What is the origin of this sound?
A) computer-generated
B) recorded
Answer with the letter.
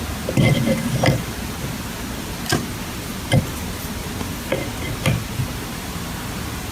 B